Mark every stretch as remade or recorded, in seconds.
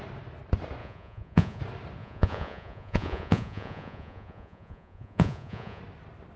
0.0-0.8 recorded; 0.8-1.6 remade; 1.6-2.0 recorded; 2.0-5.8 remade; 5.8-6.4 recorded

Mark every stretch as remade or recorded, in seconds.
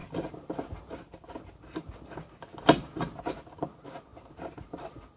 0.0-5.2 recorded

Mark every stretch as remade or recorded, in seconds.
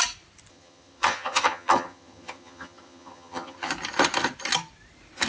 0.0-0.5 recorded; 0.5-3.7 remade; 3.7-5.3 recorded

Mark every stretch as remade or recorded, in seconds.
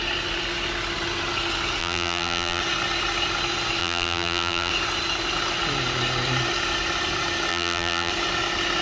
0.0-1.8 recorded; 1.8-2.6 remade; 2.6-3.8 recorded; 3.8-4.7 remade; 4.7-7.5 recorded; 7.5-8.1 remade; 8.1-8.8 recorded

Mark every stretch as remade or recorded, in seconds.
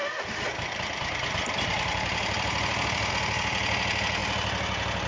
0.0-3.1 remade; 3.1-5.1 recorded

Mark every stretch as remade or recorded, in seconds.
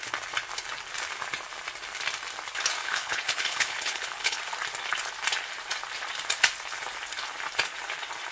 0.0-2.8 recorded; 2.8-4.4 remade; 4.4-8.3 recorded